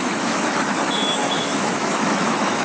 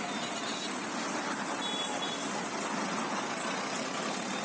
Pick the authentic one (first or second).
second